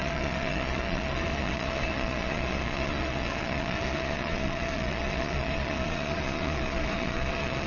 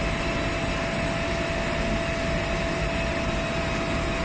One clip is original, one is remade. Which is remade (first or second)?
first